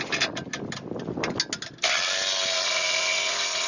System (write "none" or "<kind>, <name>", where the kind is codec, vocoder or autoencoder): none